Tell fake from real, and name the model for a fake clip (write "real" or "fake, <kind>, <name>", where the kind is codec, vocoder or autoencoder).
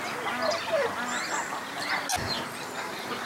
real